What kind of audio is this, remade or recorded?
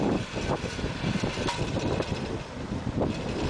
recorded